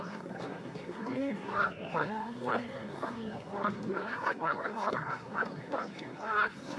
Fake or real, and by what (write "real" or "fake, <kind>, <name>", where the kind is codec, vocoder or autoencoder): fake, codec, SNAC